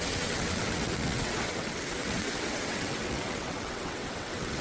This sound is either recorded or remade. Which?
remade